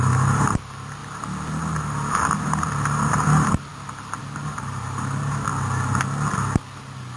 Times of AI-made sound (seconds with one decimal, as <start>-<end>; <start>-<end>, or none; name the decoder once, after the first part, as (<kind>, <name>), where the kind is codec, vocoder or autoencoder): 0.0-1.0 (vocoder, BigVGAN v2); 1.6-3.7; 4.2-5.5